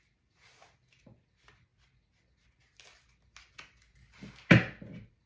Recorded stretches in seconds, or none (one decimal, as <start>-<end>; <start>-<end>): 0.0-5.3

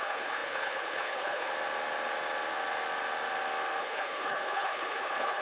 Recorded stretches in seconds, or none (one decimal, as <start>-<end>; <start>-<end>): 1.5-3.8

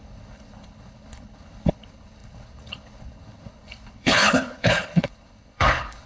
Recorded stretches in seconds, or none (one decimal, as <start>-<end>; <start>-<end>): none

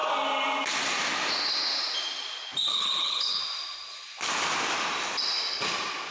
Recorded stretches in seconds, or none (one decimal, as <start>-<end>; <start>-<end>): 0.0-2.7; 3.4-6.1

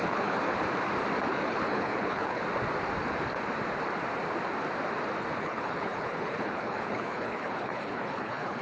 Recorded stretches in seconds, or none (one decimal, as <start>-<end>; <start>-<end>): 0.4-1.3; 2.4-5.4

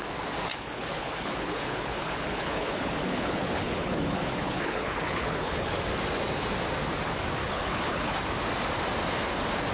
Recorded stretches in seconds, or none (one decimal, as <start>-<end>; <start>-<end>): 0.0-0.5; 5.7-7.4; 8.2-9.7